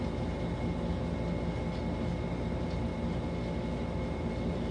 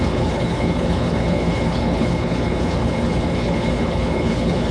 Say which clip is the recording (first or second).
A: first